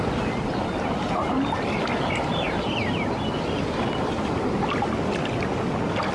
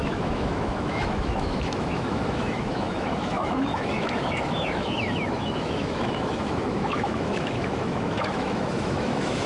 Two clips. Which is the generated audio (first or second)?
second